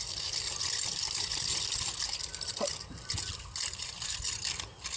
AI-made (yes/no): no